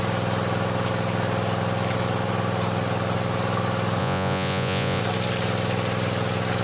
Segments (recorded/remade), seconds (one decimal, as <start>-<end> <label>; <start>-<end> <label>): 0.0-4.0 recorded; 4.0-5.0 remade; 5.0-6.6 recorded